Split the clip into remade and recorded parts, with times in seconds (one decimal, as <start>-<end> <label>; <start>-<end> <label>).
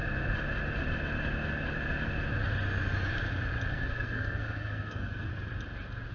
0.0-3.7 recorded; 3.7-5.3 remade; 5.3-6.1 recorded